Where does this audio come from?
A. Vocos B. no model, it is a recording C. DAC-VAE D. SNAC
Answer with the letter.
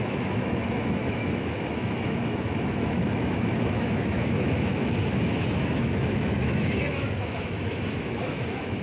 C